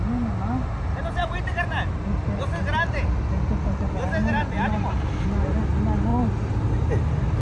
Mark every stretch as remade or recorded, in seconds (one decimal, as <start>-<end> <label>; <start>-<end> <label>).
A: 0.0-7.4 recorded